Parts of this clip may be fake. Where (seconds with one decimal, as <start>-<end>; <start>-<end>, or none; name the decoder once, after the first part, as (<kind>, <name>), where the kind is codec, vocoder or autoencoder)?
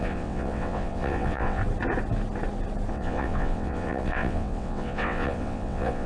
0.0-1.6 (vocoder, WaveNeXt); 2.9-6.1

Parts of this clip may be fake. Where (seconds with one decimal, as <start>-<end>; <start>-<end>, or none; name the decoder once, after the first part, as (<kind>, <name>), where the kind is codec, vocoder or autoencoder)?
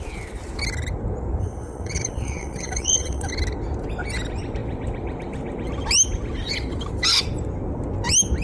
1.4-3.3 (vocoder, WaveNeXt)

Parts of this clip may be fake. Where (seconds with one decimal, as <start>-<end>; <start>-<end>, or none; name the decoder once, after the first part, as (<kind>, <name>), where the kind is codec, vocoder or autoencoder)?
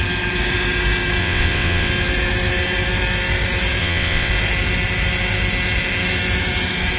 1.2-1.9 (vocoder, WaveNeXt); 3.8-4.3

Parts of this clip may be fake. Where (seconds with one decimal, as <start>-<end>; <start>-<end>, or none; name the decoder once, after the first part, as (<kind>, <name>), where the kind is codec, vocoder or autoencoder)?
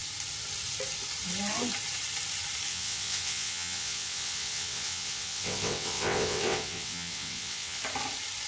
2.7-7.8 (vocoder, WaveNeXt)